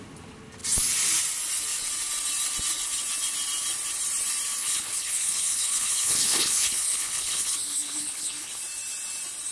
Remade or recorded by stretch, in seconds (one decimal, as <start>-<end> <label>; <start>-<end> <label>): 0.0-4.6 recorded; 4.6-8.6 remade; 8.6-9.5 recorded